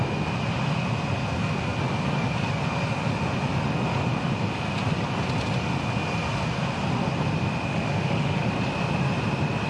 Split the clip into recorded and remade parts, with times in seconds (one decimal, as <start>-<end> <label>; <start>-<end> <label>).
0.0-7.7 recorded; 7.7-8.5 remade; 8.5-9.7 recorded

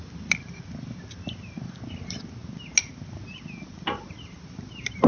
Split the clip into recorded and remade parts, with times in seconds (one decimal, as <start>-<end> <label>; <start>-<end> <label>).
0.0-5.1 recorded

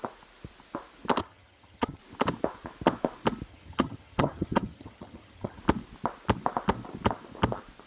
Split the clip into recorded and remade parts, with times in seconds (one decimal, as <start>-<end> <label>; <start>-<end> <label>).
0.0-1.2 recorded; 1.2-2.0 remade; 2.0-3.5 recorded; 3.5-5.6 remade; 5.6-7.9 recorded